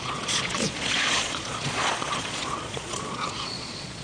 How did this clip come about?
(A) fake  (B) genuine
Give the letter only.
A